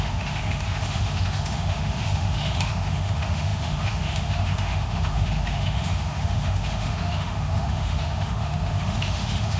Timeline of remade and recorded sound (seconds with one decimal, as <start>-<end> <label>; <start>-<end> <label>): 0.0-9.6 remade